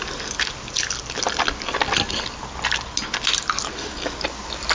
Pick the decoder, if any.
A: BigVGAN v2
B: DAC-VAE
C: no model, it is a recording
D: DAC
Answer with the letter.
C